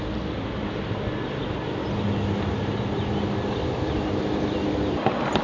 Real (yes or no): yes